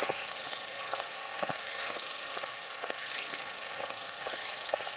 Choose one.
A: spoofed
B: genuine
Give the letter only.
A